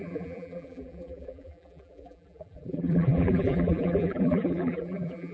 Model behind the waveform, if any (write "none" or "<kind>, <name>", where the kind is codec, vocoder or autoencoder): vocoder, BigVGAN v2